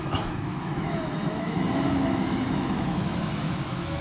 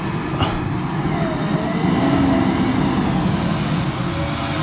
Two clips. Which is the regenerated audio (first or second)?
first